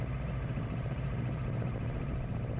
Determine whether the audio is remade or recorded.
remade